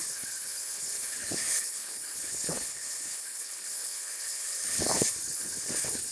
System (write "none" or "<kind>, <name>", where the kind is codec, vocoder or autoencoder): codec, HILCodec